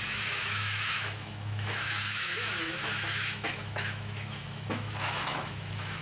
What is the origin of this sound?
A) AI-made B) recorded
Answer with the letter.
A